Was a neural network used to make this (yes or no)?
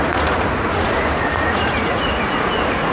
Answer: yes